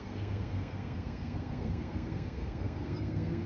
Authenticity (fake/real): fake